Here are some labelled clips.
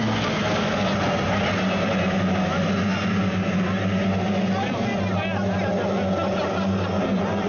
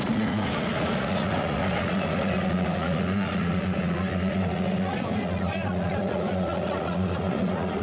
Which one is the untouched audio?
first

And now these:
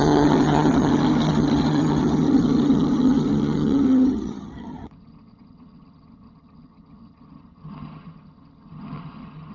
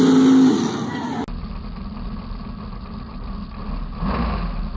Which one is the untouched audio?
second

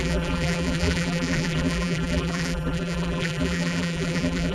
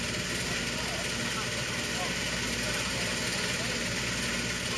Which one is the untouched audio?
second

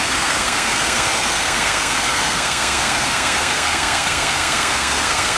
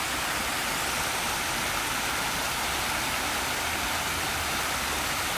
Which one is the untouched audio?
second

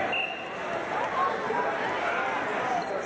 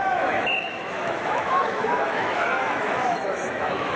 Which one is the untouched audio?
first